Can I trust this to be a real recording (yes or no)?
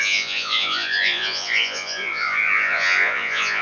no